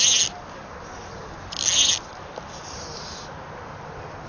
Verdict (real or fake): real